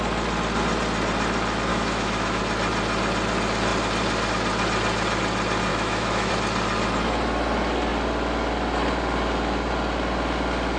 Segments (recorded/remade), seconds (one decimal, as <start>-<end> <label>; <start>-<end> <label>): 0.0-1.7 recorded; 1.7-2.4 remade; 2.4-5.7 recorded; 5.7-6.3 remade; 6.3-10.8 recorded